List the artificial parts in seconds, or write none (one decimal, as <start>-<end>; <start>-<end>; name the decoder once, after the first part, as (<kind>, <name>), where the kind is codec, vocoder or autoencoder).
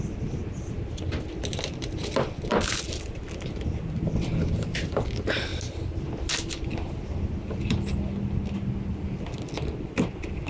none